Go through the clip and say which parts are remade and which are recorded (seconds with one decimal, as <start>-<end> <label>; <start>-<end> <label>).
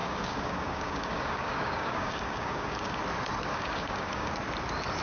0.0-3.0 remade; 3.0-3.5 recorded; 3.5-4.3 remade; 4.3-5.0 recorded